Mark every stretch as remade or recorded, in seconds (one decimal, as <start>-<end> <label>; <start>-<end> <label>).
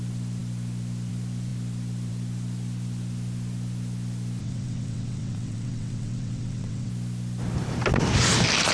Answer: 0.0-4.4 recorded; 4.4-6.9 remade; 6.9-8.7 recorded